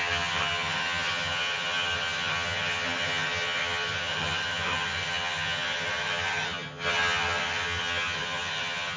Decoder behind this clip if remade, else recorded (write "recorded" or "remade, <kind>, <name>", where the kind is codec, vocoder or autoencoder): remade, vocoder, HiFi-GAN